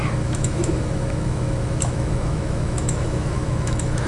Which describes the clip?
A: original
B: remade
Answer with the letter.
B